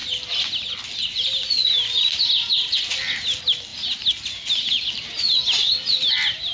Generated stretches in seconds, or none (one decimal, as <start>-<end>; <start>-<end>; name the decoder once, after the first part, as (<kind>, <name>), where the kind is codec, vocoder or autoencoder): none